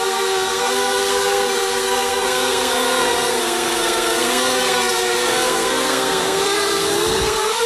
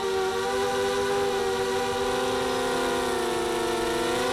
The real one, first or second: second